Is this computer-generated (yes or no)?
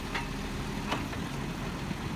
no